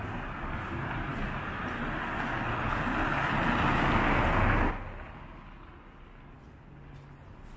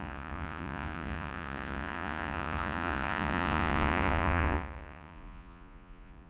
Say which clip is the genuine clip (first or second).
first